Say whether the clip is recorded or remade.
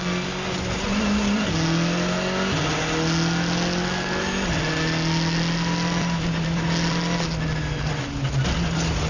recorded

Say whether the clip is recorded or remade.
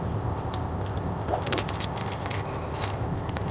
remade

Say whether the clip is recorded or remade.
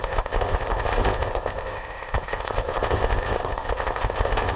remade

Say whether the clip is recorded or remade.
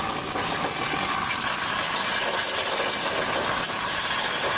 recorded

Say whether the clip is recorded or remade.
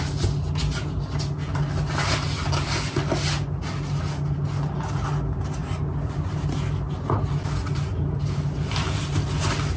recorded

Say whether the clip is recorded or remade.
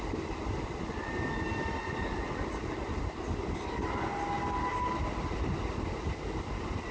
recorded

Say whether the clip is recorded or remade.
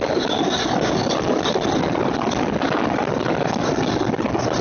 recorded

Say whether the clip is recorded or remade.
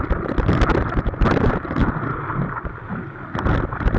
recorded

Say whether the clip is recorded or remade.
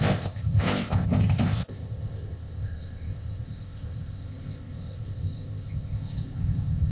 remade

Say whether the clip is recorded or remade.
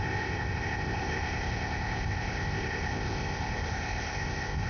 remade